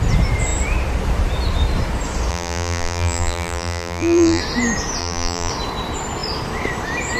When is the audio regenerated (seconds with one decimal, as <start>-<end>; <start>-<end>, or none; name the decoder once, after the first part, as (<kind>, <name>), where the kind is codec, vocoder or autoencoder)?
2.3-4.4 (vocoder, BigVGAN v2); 5.0-5.5